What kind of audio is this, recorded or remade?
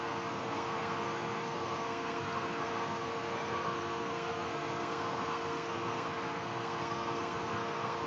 remade